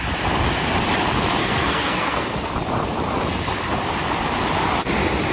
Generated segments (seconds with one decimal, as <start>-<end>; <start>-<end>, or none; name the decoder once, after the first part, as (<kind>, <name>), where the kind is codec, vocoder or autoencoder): 1.4-2.5 (codec, SNAC)